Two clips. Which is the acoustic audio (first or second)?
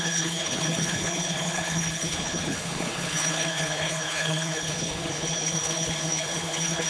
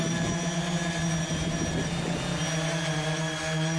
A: second